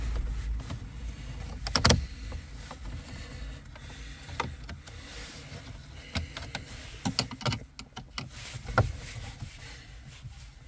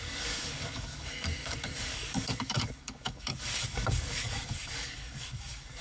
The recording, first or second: first